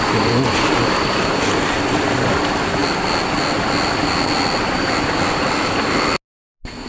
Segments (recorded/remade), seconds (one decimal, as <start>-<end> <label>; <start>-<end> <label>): 0.0-6.9 recorded